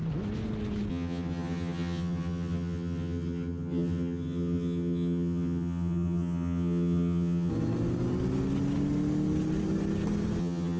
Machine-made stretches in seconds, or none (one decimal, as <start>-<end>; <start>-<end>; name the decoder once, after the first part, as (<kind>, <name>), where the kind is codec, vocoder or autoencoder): 0.9-7.5 (vocoder, HiFi-GAN); 10.4-10.8